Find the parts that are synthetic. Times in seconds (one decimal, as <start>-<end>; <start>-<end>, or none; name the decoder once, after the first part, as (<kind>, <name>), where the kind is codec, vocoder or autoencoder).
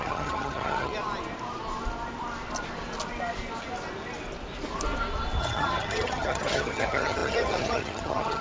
0.0-0.9 (vocoder, HiFi-GAN); 5.4-8.4